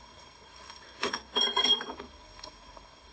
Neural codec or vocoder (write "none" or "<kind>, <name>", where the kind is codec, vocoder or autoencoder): codec, SNAC